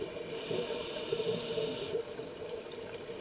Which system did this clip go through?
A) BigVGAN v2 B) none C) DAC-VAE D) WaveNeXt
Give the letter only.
B